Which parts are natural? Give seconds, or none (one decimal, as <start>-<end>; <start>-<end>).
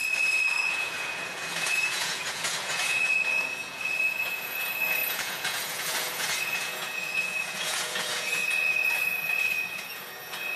0.0-0.5